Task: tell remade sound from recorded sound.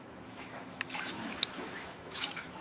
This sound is remade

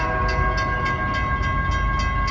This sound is recorded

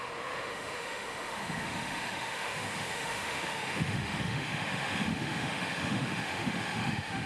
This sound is remade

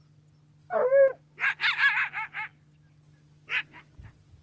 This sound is recorded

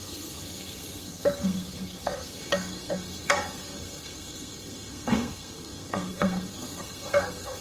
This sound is remade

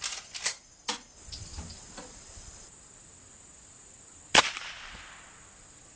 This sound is recorded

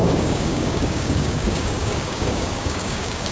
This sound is remade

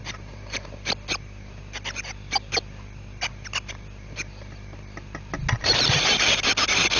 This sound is recorded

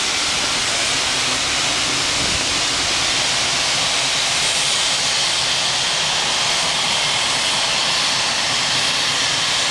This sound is recorded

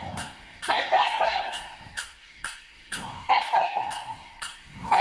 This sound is remade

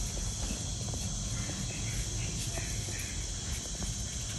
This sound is recorded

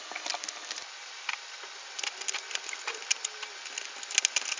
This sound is recorded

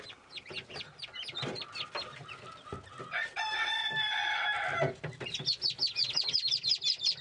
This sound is recorded